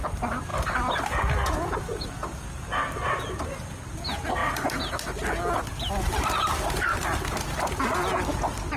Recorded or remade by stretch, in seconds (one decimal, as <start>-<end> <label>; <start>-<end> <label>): 0.0-8.8 recorded